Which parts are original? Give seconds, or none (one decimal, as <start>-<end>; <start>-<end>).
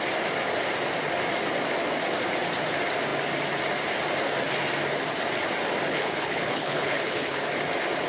0.0-5.9; 7.4-8.1